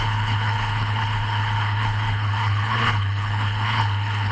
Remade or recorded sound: remade